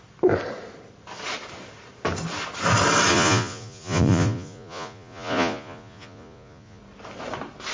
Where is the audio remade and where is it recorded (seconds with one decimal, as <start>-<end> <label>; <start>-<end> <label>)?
0.0-3.1 recorded; 3.1-6.8 remade; 6.8-7.7 recorded